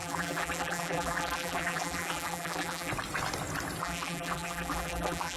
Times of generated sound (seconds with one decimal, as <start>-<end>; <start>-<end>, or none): 0.0-2.9; 3.8-5.4

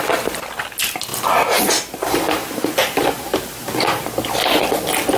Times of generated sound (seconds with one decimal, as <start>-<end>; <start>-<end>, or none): 1.1-4.0

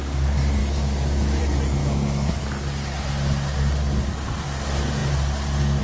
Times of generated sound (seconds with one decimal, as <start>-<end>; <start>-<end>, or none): 0.6-1.4; 1.8-2.4

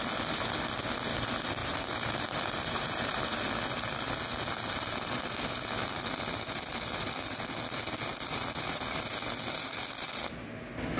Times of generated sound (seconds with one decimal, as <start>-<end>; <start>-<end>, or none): 1.6-3.5